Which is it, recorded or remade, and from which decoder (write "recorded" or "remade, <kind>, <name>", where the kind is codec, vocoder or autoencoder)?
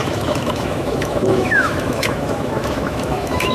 remade, autoencoder, DAC-VAE